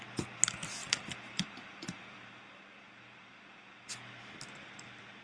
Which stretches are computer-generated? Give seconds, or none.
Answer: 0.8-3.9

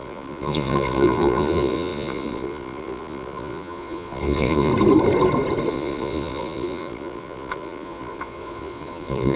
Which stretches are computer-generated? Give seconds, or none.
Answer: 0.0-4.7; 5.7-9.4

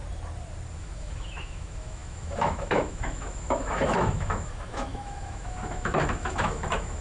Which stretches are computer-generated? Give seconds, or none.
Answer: 0.8-7.0